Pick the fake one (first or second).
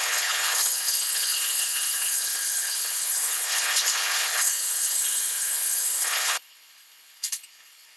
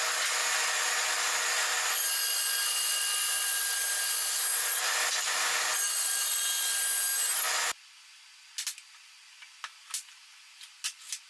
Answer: first